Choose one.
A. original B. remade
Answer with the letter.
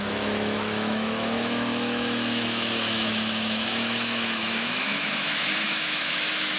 B